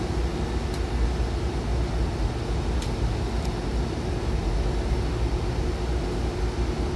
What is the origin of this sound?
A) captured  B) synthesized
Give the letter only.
A